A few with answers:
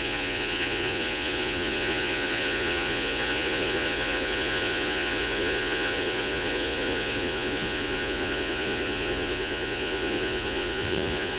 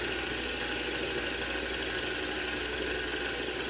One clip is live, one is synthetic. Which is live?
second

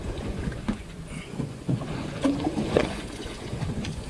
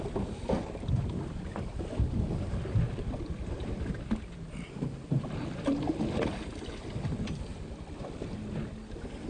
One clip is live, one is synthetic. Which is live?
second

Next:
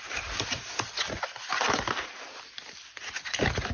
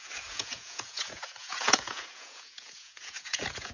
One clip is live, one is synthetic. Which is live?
first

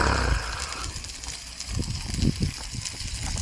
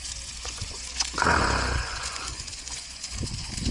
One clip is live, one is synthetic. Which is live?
first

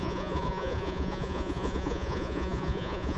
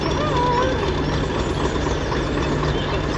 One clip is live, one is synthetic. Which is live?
second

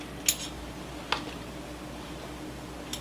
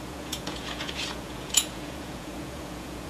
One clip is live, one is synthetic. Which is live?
first